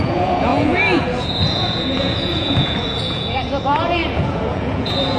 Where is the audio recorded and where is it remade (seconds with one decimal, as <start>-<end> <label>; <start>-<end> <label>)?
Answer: 0.0-5.2 remade